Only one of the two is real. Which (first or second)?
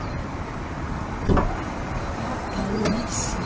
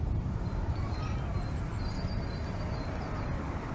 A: second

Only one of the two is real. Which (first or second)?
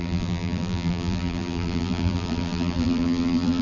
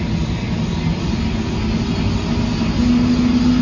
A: second